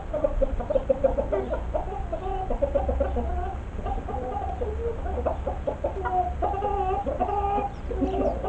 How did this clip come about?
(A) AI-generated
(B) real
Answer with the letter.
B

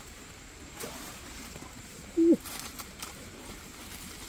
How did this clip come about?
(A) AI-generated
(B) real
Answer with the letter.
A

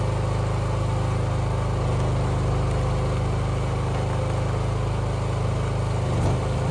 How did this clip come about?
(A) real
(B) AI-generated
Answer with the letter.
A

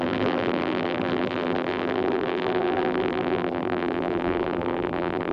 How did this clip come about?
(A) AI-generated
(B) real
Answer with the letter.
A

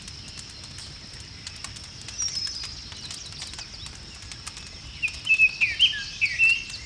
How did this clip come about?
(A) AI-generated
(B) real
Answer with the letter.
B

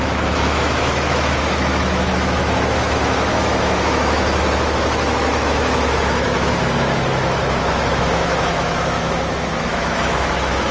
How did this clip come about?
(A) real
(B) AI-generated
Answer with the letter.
B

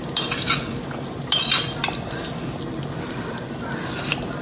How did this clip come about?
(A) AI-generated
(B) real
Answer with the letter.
B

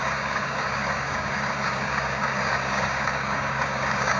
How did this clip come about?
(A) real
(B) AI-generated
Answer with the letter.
B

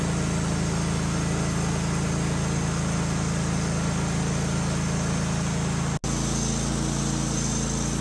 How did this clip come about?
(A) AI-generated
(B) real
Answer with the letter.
B